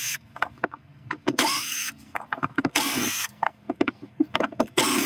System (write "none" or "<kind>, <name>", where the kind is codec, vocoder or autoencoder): codec, SNAC